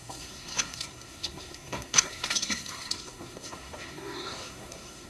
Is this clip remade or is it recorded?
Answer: remade